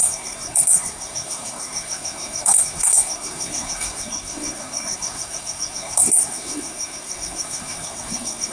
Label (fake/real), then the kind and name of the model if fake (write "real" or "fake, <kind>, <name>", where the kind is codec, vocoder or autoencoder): fake, codec, SNAC